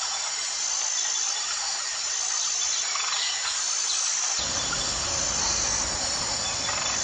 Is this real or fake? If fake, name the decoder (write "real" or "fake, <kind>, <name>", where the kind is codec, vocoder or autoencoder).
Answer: real